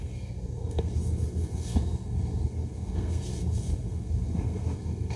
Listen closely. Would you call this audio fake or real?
fake